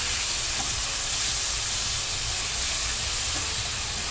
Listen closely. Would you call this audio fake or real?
real